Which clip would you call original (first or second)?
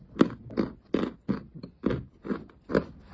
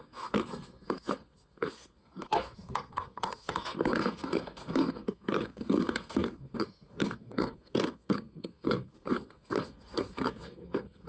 first